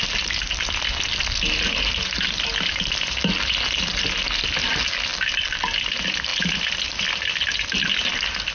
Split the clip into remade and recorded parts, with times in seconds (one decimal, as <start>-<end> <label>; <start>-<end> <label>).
0.0-8.5 recorded